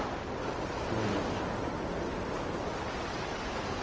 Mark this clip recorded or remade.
recorded